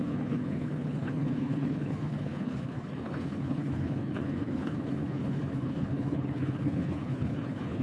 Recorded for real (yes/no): no